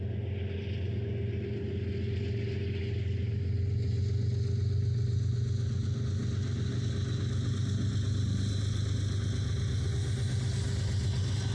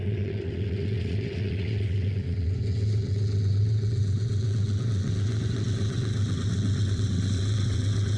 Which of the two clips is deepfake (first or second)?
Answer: second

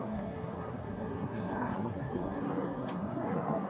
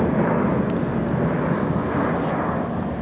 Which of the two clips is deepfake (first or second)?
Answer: first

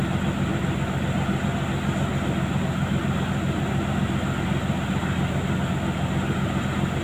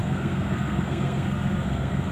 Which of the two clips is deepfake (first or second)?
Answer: second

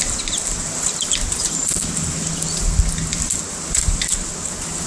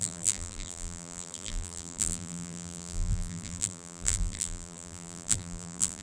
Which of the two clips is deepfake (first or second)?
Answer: second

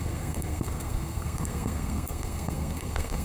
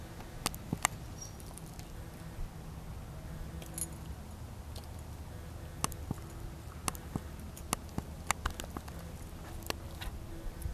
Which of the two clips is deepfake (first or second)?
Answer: first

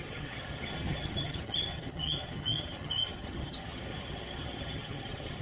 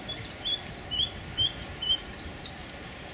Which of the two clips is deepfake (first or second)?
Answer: first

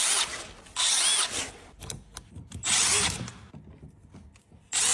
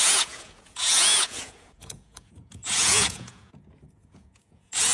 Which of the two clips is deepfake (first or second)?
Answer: second